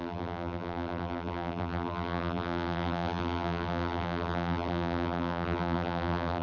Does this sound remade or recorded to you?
remade